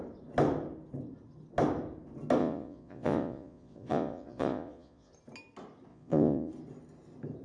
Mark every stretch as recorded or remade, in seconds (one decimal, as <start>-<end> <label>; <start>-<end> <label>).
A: 0.0-2.4 recorded; 2.4-5.1 remade; 5.1-5.9 recorded; 5.9-6.5 remade; 6.5-7.4 recorded